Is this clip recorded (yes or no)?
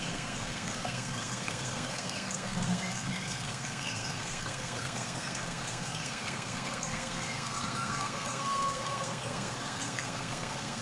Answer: no